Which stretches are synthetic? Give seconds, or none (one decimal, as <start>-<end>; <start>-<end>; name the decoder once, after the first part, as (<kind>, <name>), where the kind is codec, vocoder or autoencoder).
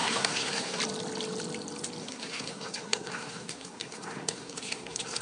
0.0-0.8 (codec, SNAC); 2.0-5.2